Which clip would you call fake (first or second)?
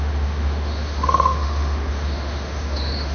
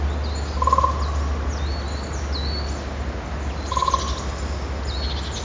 first